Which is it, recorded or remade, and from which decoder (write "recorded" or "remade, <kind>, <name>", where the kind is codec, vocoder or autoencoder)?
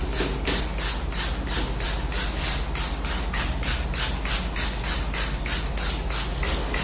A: recorded